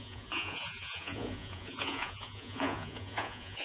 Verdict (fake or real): fake